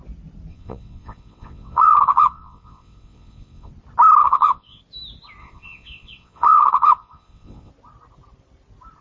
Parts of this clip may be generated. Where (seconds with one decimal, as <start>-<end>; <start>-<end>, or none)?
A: 0.5-3.7; 4.2-4.8; 5.4-7.7